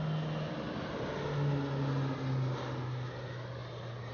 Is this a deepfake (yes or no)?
no